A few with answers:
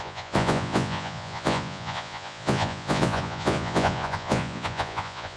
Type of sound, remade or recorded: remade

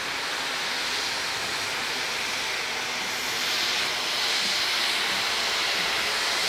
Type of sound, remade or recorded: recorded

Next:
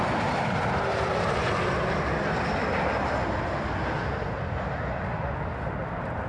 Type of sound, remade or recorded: recorded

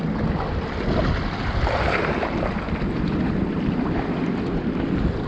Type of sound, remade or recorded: recorded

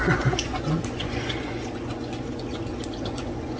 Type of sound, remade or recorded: remade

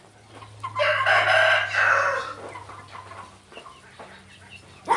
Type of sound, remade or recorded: recorded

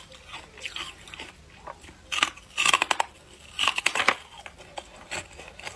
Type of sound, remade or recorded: recorded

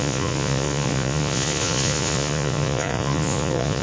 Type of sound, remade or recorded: remade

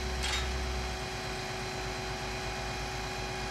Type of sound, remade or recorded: recorded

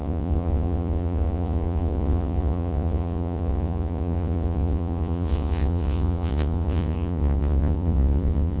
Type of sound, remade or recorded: remade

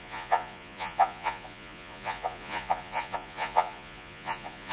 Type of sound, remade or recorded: remade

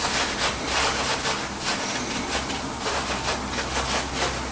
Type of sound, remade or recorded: recorded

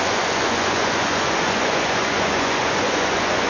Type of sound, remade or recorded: remade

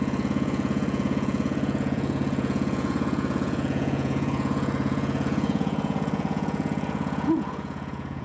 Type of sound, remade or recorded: remade